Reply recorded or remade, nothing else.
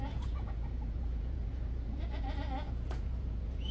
remade